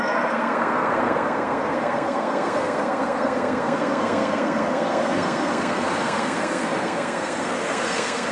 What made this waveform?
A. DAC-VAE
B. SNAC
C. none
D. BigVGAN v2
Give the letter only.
B